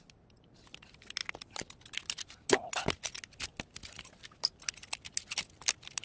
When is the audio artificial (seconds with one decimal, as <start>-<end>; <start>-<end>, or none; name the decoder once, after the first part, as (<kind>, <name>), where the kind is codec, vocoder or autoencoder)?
none